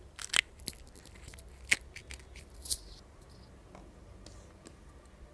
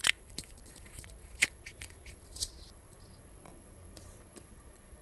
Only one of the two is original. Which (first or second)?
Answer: first